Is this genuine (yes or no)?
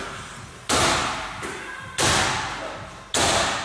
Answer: yes